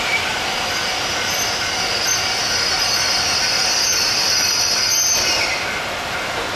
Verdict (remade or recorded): remade